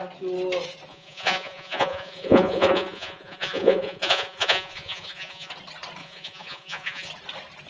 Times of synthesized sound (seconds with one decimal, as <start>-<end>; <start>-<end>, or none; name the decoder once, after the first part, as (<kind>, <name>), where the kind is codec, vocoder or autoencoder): 0.9-5.5 (vocoder, Vocos); 6.0-7.1